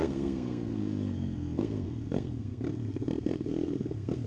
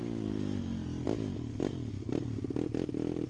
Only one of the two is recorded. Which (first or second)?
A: second